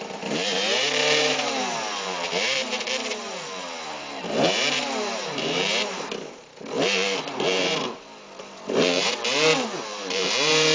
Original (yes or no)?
no